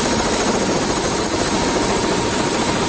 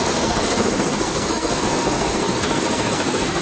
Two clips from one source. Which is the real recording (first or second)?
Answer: first